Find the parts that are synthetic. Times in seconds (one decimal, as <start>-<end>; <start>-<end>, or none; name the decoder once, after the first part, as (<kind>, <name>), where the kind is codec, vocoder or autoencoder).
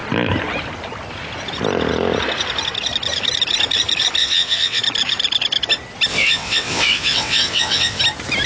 4.2-4.8 (vocoder, WaveNeXt); 6.1-8.0